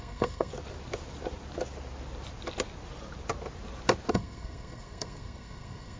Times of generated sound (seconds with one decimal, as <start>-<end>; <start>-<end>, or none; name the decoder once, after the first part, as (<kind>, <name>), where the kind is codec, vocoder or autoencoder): 0.0-0.5 (codec, SNAC); 4.1-6.0